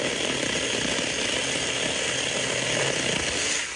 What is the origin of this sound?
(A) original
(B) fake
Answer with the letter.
A